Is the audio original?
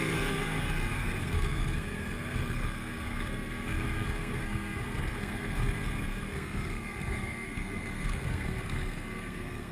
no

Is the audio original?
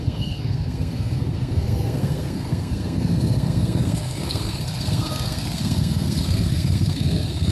no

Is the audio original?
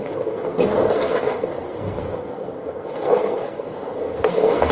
no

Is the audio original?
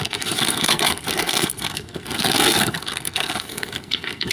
no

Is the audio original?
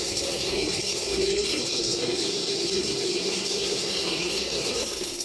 no